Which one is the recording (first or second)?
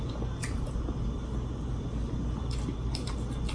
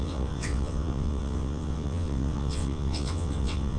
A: first